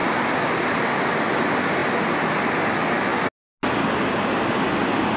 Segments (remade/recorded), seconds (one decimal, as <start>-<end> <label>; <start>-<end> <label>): 0.0-5.2 recorded